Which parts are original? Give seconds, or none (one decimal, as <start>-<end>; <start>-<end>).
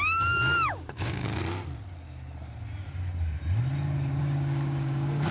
1.4-4.2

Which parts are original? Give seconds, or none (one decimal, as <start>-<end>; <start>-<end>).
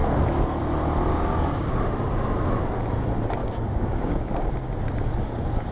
0.0-1.1; 1.8-3.4; 4.5-5.7